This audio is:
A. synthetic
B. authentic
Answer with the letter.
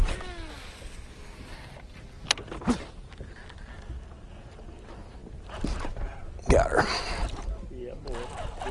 B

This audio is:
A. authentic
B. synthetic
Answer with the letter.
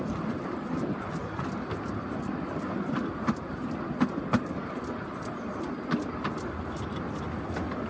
A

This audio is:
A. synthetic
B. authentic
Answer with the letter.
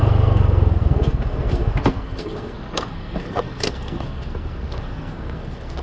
A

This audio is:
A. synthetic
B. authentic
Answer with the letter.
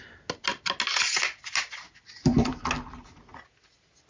B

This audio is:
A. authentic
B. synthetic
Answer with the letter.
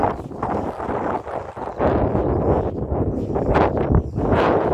A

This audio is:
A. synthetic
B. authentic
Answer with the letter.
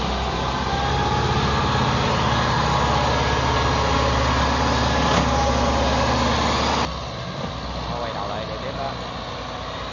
B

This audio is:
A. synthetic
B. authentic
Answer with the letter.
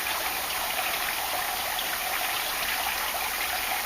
B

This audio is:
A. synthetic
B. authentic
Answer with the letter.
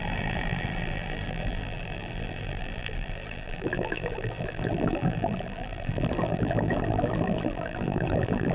A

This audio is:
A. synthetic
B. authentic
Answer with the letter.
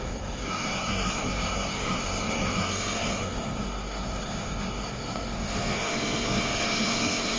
A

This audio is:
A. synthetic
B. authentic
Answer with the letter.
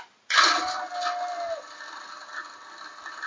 B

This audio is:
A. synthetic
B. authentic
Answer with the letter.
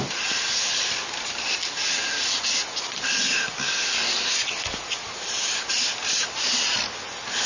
B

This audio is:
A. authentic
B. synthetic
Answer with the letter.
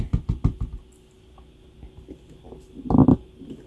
A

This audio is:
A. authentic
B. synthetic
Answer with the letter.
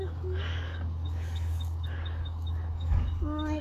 B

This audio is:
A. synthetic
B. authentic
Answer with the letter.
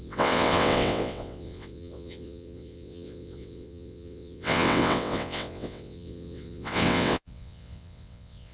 A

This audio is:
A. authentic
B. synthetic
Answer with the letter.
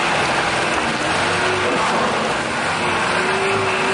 A